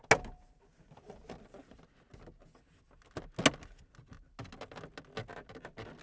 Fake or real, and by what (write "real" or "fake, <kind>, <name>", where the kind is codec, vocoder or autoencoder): real